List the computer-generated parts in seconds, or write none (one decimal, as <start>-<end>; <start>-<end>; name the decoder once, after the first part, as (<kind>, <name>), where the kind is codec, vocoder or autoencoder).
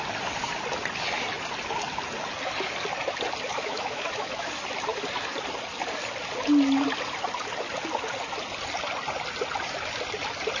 3.5-4.5 (autoencoder, DAC-VAE)